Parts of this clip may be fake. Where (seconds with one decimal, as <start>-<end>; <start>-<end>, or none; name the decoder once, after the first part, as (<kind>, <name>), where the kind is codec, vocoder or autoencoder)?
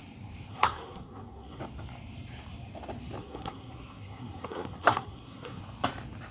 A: 0.5-1.6 (codec, SNAC); 3.2-5.6